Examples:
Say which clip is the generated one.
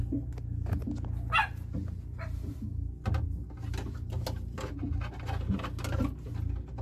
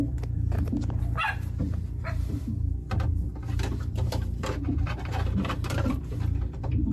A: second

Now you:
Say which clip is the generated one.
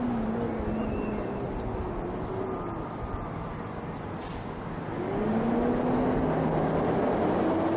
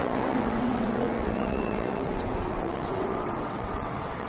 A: second